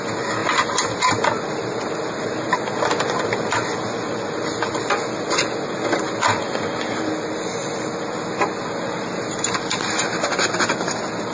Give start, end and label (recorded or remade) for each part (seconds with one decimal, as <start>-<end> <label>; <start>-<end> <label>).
0.0-11.3 recorded